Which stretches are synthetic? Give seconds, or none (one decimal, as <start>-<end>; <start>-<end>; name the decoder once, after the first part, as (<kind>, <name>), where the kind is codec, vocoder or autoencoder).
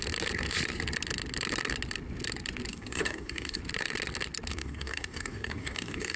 2.7-3.6 (codec, DAC); 4.5-6.2